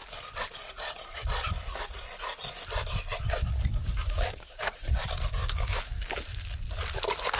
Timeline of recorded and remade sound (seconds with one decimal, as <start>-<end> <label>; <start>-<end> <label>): 0.0-3.7 recorded; 3.7-4.7 remade; 4.7-5.4 recorded; 5.4-6.1 remade; 6.1-7.4 recorded